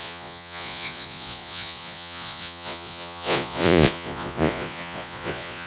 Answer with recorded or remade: remade